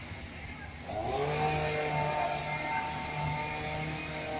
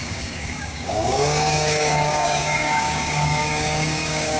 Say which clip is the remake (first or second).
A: second